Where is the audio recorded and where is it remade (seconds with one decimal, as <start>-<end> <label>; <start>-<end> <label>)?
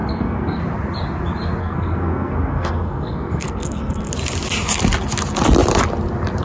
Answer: 0.0-0.6 remade; 0.6-1.6 recorded; 1.6-4.1 remade; 4.1-6.4 recorded